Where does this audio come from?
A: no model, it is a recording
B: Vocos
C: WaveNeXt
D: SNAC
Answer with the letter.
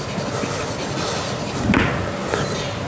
A